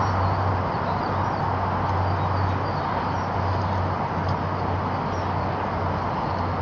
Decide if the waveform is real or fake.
real